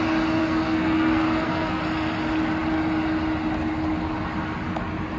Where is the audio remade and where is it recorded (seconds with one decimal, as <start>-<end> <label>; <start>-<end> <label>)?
0.0-0.4 recorded; 0.4-1.8 remade; 1.8-5.2 recorded